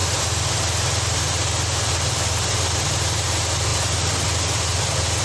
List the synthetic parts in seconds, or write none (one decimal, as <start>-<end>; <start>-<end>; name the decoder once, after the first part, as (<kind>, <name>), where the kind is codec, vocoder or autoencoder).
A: none